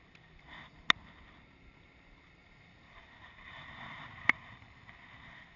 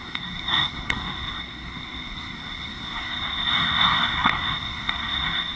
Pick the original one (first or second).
first